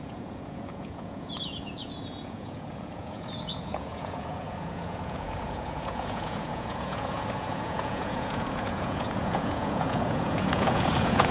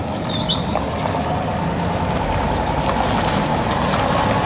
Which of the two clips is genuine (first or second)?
second